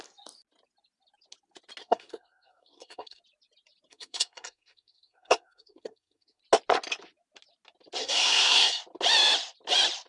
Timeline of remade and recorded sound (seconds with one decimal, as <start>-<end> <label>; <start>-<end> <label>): 0.0-1.8 recorded; 1.8-3.2 remade; 3.2-3.9 recorded; 3.9-6.4 remade; 6.4-8.0 recorded; 8.0-8.8 remade; 8.8-10.1 recorded